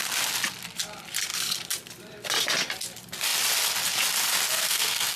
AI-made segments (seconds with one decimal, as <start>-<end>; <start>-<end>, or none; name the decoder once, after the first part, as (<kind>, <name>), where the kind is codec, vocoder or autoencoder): 4.5-5.2 (codec, SNAC)

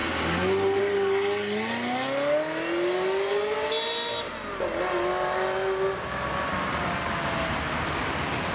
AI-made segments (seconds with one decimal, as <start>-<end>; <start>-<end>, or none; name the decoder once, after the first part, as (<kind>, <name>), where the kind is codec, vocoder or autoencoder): none

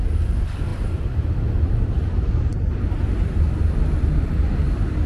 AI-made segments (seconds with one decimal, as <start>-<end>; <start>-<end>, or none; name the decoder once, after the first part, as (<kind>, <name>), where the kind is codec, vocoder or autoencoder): 0.0-5.1 (vocoder, BigVGAN v2)

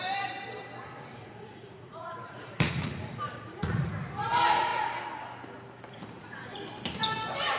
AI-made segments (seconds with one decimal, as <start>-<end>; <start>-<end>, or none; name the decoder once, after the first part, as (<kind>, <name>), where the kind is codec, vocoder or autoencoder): 1.1-3.9 (vocoder, Vocos); 5.9-6.6

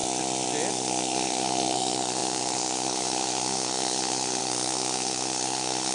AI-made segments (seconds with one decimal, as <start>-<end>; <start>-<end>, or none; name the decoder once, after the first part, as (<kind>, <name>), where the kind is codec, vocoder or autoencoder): 0.7-5.9 (codec, SNAC)